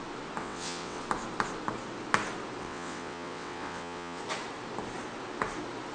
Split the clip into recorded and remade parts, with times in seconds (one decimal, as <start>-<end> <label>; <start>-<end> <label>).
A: 0.0-0.4 recorded; 0.4-1.0 remade; 1.0-2.6 recorded; 2.6-4.2 remade; 4.2-5.9 recorded